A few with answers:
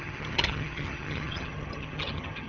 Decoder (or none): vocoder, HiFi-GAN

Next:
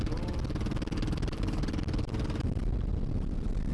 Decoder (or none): none